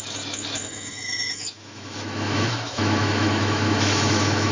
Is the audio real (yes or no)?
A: no